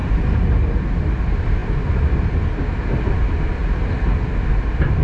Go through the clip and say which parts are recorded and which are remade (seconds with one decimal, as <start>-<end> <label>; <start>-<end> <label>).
0.0-3.6 remade; 3.6-4.5 recorded; 4.5-5.0 remade